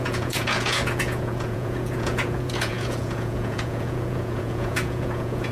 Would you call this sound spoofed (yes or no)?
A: yes